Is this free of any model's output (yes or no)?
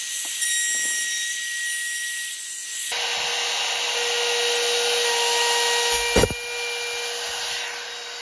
yes